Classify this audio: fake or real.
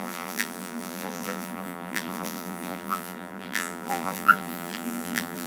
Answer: fake